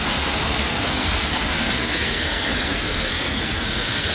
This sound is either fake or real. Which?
fake